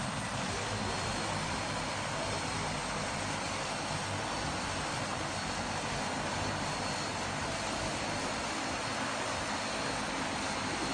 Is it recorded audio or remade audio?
recorded